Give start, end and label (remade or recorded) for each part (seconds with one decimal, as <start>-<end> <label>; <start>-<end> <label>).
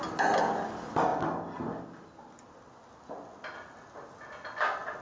0.0-5.0 recorded